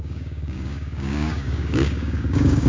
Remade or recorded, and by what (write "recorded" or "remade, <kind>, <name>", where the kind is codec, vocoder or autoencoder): remade, codec, DAC